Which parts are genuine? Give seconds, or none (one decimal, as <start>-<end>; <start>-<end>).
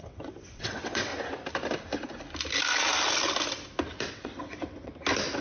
1.1-4.1; 4.9-5.4